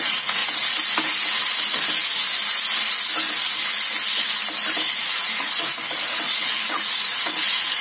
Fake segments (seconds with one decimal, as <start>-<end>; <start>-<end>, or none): 0.0-0.4; 4.9-7.8